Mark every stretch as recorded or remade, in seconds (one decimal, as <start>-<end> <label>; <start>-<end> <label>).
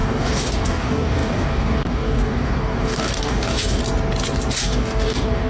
0.0-3.8 remade; 3.8-4.6 recorded; 4.6-5.5 remade